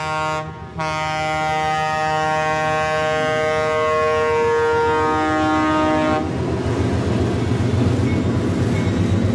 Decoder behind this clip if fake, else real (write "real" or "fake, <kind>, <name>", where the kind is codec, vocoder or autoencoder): real